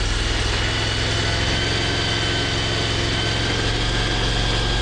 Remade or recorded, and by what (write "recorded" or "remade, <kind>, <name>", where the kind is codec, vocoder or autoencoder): recorded